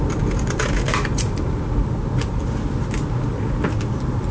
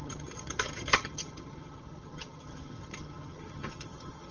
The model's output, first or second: second